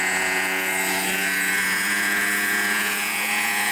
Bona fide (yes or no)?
no